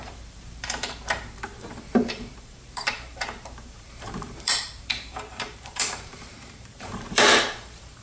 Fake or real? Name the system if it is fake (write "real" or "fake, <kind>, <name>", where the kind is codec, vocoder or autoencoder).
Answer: fake, vocoder, BigVGAN v2